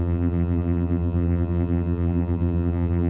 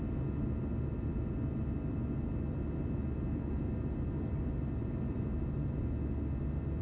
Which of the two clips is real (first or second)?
second